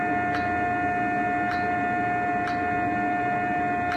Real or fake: real